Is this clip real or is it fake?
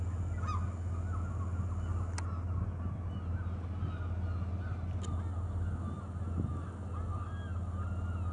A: real